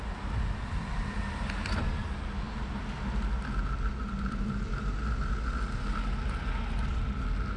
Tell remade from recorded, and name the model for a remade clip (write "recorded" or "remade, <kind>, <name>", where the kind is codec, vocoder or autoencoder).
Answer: recorded